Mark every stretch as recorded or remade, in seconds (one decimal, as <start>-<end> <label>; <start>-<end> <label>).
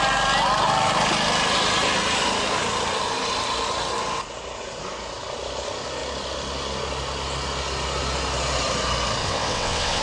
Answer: 0.0-9.2 recorded; 9.2-10.0 remade